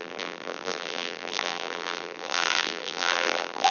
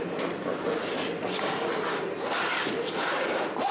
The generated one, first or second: first